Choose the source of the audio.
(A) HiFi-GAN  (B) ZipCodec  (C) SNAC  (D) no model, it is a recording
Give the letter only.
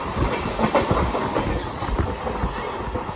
D